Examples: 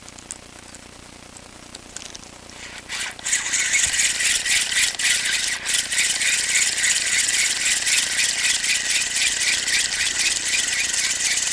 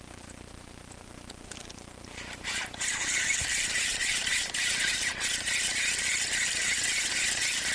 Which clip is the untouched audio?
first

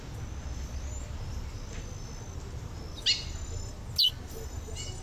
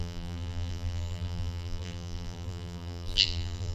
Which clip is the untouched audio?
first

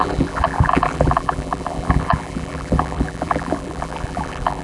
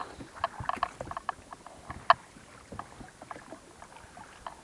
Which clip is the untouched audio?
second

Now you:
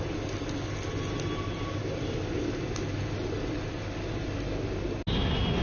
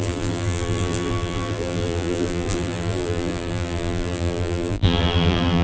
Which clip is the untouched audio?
first